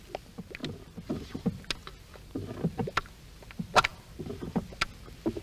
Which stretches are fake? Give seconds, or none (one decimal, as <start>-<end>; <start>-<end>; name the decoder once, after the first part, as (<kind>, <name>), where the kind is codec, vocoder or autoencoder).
none